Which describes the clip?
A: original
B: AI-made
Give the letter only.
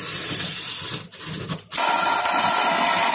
A